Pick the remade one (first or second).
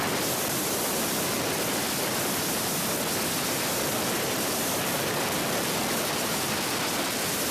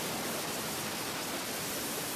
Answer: second